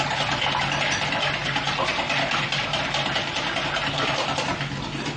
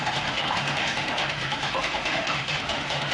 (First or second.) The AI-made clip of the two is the second